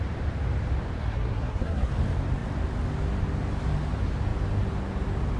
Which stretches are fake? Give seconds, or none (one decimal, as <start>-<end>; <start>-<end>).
1.0-1.9